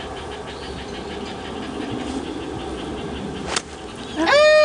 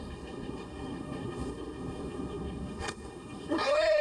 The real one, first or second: first